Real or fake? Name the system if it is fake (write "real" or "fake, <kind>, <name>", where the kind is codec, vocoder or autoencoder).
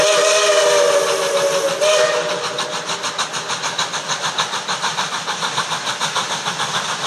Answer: real